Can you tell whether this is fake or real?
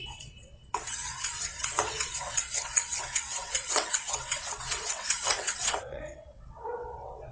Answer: fake